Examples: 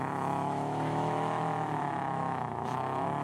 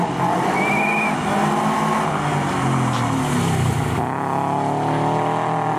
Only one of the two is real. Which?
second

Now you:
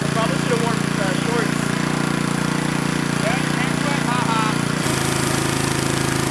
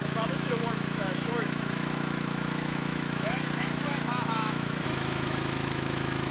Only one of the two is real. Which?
first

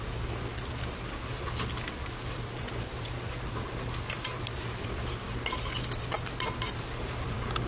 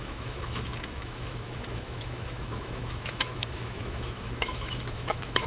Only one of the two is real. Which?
first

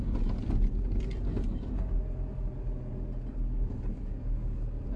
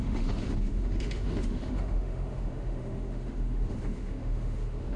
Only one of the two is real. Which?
first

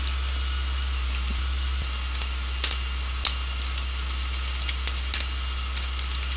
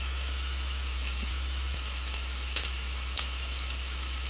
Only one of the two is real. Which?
first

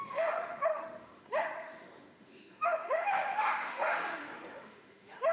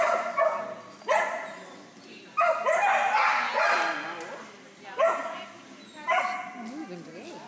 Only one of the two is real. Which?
second